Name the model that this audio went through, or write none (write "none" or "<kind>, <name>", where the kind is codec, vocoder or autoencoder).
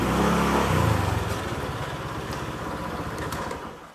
none